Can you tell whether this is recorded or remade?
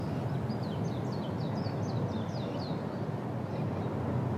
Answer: recorded